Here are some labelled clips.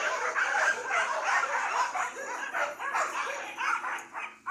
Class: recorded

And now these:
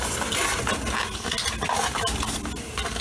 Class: recorded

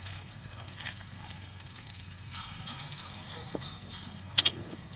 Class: remade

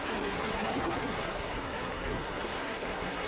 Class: remade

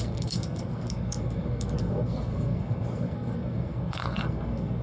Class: remade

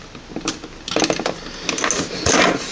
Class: recorded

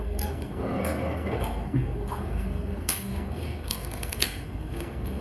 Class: remade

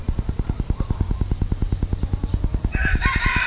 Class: recorded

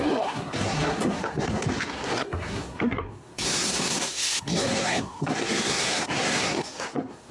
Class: remade